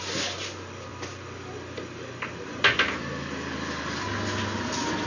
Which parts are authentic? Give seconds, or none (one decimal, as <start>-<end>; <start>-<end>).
0.0-5.1